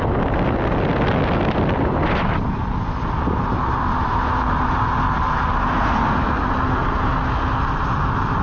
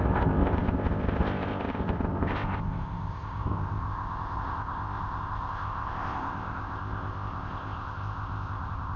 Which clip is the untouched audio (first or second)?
first